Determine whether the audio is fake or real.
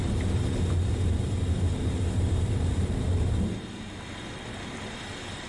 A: real